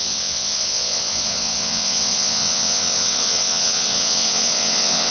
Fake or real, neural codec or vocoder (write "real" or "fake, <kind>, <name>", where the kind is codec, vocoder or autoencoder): fake, vocoder, WaveNeXt